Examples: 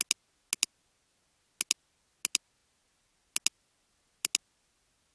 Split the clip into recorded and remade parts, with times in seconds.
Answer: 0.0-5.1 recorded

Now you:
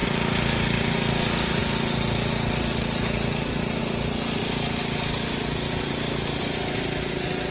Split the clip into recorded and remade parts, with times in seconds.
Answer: 0.0-7.5 recorded

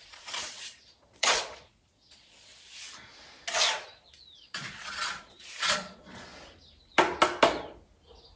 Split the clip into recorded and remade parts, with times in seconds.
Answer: 0.0-2.5 remade; 2.5-4.4 recorded; 4.4-6.3 remade; 6.3-8.4 recorded